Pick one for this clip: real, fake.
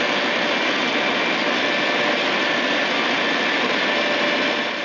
real